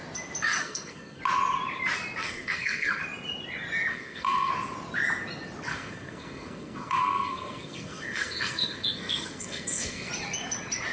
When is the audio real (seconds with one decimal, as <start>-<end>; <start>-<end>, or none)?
0.0-0.6; 1.2-2.2; 3.0-3.9; 4.5-5.7; 10.1-10.9